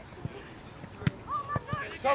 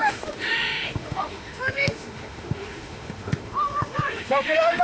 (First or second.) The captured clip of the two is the first